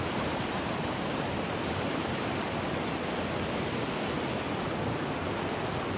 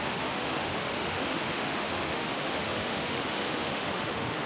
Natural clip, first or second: first